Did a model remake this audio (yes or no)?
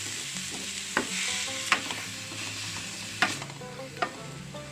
no